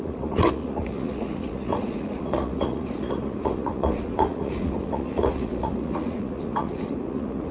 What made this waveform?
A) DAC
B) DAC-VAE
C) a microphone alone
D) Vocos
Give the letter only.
D